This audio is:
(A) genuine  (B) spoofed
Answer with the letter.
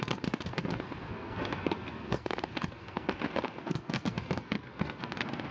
B